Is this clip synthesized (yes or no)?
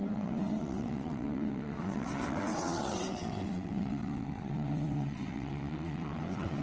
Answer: yes